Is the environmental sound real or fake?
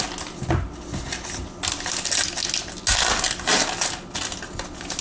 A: real